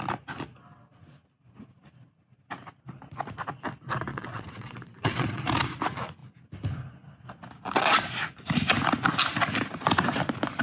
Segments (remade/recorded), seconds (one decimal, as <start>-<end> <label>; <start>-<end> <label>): 0.0-4.1 recorded; 4.1-5.4 remade; 5.4-10.6 recorded